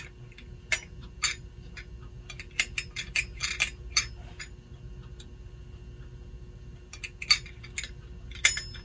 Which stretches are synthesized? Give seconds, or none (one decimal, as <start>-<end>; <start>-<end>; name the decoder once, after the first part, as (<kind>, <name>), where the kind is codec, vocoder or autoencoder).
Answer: none